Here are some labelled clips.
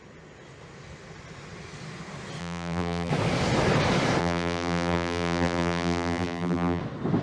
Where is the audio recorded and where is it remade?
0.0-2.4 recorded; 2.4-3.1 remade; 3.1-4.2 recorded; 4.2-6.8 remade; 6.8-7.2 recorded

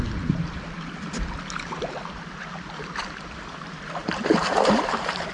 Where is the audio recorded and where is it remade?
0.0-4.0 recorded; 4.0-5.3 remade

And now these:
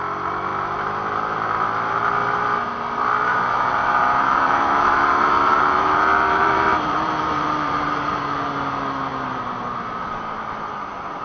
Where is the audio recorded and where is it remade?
0.0-3.3 recorded; 3.3-8.2 remade; 8.2-11.2 recorded

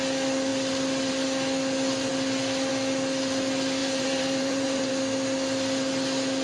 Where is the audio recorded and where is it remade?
0.0-3.8 recorded; 3.8-4.9 remade; 4.9-6.4 recorded